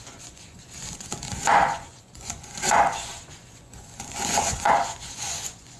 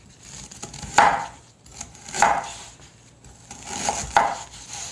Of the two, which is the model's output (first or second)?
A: first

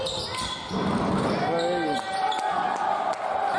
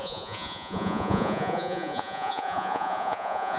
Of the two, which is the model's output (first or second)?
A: second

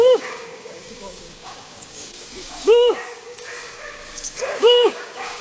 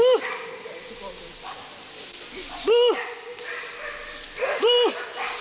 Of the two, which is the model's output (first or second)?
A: first